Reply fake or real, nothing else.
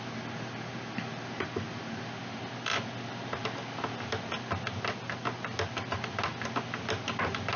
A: real